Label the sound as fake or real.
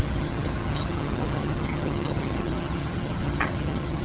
fake